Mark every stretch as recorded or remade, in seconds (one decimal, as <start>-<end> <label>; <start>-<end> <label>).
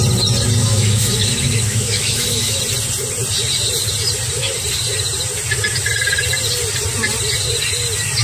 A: 0.0-0.6 recorded; 0.6-2.6 remade; 2.6-8.2 recorded